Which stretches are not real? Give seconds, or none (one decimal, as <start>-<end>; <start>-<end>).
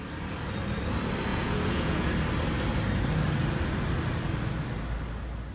1.3-2.1